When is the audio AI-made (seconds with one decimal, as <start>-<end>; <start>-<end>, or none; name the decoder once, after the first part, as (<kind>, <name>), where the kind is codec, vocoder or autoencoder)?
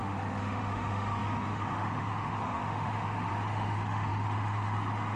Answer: 0.0-5.2 (autoencoder, DAC-VAE)